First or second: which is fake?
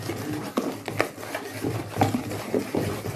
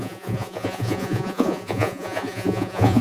second